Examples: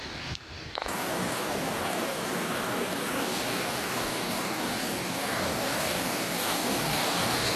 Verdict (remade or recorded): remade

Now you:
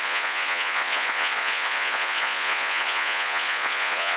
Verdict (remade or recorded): remade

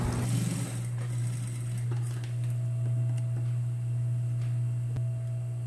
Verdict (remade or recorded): recorded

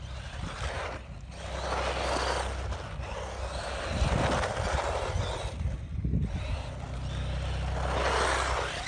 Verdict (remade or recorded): recorded